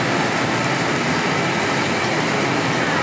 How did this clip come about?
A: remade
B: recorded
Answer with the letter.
B